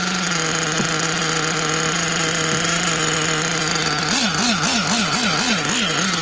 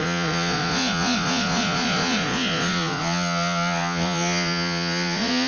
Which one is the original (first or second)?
first